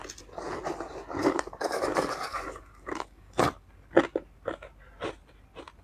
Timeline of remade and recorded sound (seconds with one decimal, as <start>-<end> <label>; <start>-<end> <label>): 0.0-1.2 recorded; 1.2-3.4 remade; 3.4-5.8 recorded